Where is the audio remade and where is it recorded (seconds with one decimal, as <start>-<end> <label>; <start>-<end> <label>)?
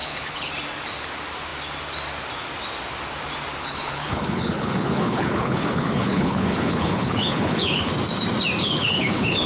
0.0-0.5 remade; 0.5-3.6 recorded; 3.6-7.9 remade; 7.9-8.6 recorded; 8.6-9.5 remade